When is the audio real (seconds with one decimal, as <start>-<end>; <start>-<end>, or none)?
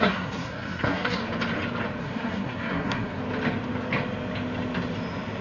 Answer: 1.2-2.0; 3.2-5.4